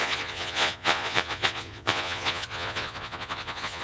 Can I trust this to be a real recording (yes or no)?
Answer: no